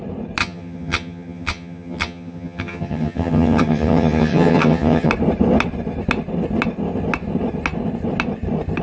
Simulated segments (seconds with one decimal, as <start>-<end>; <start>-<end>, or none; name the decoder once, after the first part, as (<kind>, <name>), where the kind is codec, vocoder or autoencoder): 0.4-5.1 (vocoder, HiFi-GAN)